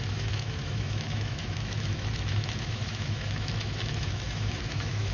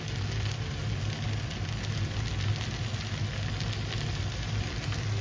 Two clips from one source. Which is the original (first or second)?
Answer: second